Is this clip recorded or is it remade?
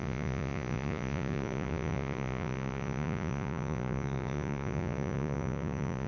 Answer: remade